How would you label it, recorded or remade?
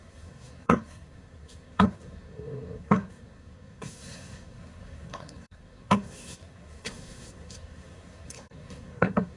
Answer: remade